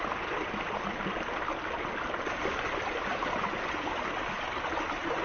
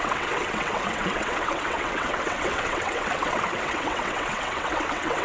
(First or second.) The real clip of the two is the first